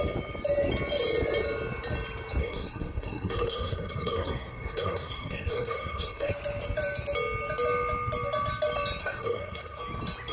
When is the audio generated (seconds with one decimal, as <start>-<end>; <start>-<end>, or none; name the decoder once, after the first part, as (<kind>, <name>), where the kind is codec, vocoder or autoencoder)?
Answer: 2.4-6.3 (codec, SNAC); 9.0-9.8